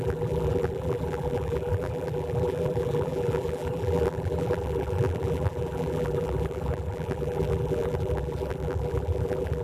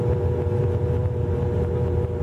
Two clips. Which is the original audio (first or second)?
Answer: second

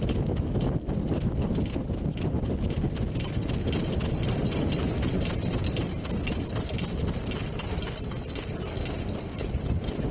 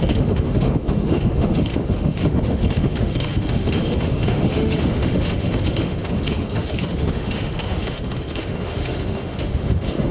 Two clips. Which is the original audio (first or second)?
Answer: first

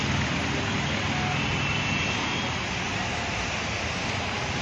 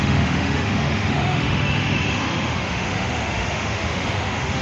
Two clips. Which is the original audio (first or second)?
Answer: first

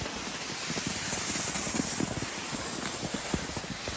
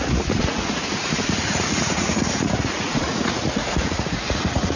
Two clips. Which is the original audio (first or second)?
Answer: first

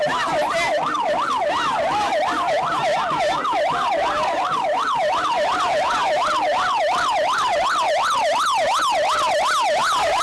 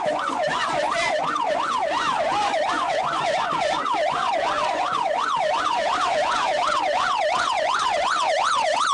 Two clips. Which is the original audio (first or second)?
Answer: first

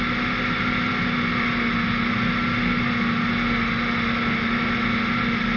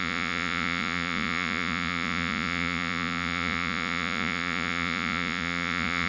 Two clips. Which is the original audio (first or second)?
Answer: first